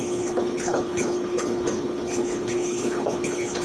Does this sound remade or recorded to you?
remade